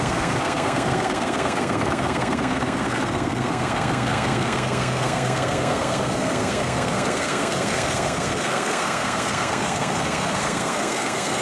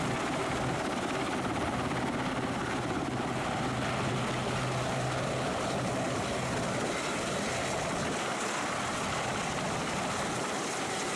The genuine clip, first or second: second